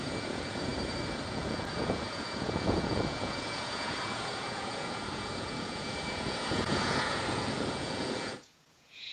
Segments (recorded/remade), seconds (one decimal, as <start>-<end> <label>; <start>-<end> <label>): 0.0-0.7 remade; 0.7-1.3 recorded; 1.3-9.1 remade